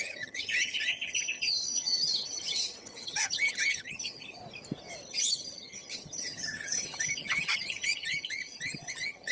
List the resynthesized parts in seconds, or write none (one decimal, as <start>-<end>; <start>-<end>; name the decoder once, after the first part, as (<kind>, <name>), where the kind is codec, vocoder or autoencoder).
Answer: 0.0-4.4 (vocoder, HiFi-GAN); 5.1-9.3